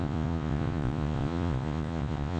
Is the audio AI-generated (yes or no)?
yes